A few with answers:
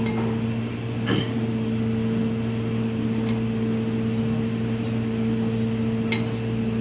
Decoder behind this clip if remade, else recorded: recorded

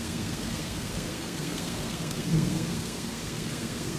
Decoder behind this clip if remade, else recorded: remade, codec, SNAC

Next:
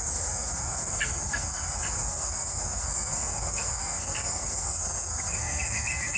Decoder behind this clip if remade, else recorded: remade, codec, SNAC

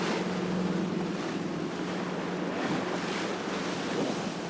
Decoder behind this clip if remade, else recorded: recorded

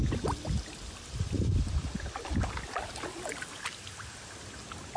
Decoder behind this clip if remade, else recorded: recorded